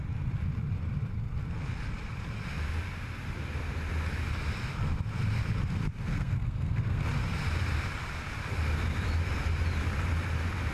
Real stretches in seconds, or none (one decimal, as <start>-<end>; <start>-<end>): 0.0-6.1; 7.0-10.7